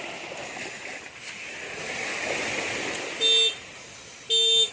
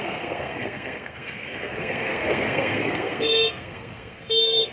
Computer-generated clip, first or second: second